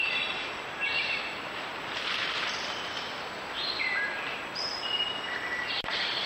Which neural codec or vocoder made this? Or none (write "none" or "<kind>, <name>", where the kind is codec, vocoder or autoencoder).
vocoder, BigVGAN v2